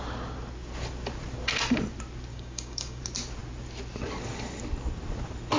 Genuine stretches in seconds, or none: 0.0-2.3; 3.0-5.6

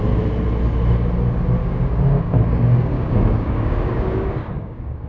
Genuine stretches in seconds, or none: 0.0-1.6

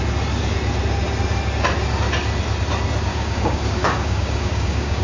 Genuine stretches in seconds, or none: 0.0-3.1